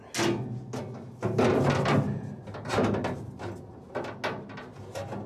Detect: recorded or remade recorded